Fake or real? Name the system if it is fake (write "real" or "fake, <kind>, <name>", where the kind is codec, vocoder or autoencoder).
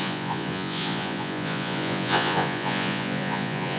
fake, vocoder, Vocos